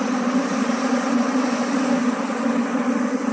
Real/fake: real